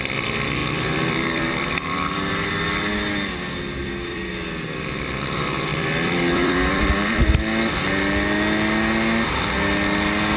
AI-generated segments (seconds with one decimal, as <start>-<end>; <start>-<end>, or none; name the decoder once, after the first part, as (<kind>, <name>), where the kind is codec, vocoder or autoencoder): 0.6-2.5 (vocoder, BigVGAN v2); 3.8-4.3; 5.7-6.7